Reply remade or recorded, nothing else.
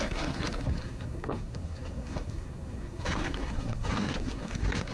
remade